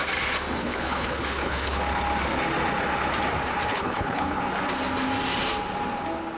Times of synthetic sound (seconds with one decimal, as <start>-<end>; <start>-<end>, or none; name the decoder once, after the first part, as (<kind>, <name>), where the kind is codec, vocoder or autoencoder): 0.6-1.8 (codec, HILCodec); 3.7-4.4